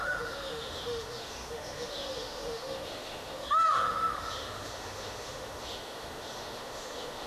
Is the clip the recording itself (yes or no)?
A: no